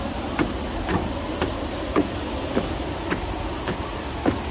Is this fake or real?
real